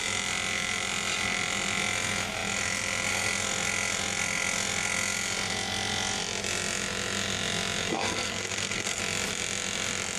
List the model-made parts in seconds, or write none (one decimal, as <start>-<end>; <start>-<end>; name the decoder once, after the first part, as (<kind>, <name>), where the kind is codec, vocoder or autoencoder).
7.9-9.0 (codec, SNAC)

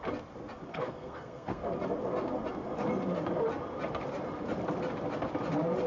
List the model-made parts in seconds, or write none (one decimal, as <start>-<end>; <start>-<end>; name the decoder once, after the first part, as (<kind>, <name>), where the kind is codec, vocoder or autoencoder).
0.7-1.6 (codec, SNAC)

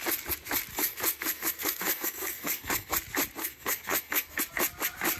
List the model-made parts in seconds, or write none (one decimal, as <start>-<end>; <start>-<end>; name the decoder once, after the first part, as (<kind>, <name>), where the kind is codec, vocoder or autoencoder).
0.7-2.9 (codec, SNAC); 3.4-4.4

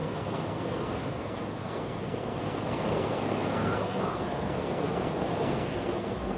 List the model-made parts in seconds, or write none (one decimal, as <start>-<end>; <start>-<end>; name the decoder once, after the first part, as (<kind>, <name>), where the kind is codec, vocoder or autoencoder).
0.0-6.4 (codec, SNAC)

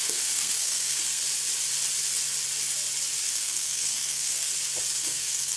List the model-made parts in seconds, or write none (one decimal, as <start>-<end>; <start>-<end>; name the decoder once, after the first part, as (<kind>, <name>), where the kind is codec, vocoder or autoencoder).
0.0-1.2 (codec, SNAC); 3.2-4.5; 5.0-5.6

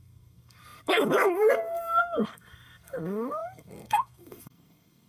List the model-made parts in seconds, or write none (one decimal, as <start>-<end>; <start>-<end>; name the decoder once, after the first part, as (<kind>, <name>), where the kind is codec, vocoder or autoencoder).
0.0-5.1 (codec, SNAC)

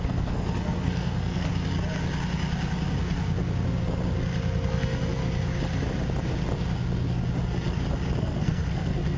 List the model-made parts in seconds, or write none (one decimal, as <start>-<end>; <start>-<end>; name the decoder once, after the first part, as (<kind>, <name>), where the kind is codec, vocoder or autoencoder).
0.0-1.5 (codec, SNAC); 4.7-5.2; 8.2-9.2

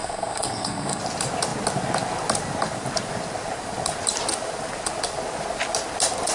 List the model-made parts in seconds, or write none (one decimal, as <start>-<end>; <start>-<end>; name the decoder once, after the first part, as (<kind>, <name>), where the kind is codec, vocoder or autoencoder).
0.0-1.0 (codec, SNAC)